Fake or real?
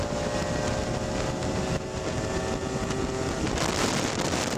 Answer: real